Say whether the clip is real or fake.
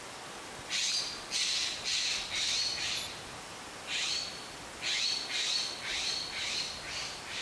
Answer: real